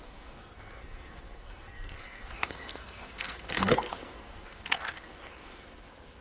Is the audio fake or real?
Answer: fake